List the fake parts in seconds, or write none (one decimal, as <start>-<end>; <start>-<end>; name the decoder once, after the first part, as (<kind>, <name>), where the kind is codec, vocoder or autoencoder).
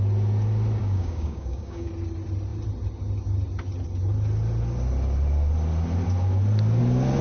0.8-1.9 (codec, DAC)